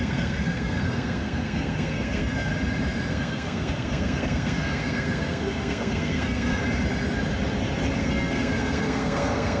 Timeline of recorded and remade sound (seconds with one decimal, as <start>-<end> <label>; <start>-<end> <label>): 0.0-2.5 remade; 2.5-3.1 recorded; 3.1-6.6 remade; 6.6-8.0 recorded; 8.0-9.6 remade